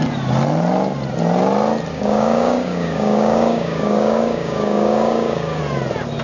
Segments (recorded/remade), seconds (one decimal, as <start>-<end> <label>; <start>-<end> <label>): 0.0-1.9 recorded; 1.9-5.6 remade; 5.6-6.2 recorded